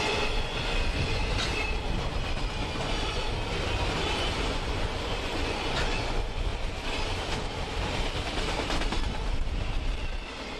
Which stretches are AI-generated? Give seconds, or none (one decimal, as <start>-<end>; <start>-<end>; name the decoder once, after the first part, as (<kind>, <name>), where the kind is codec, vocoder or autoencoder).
0.0-1.2 (vocoder, Vocos); 2.6-3.2; 4.2-6.5